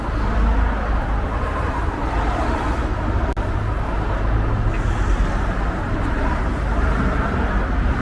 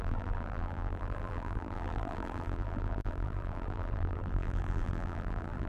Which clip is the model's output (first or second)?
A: second